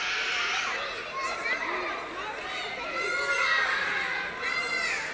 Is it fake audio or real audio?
real